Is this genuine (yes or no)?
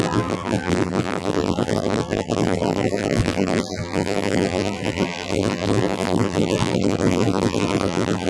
no